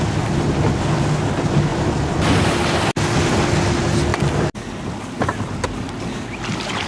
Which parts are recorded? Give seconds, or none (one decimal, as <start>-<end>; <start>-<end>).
0.0-6.9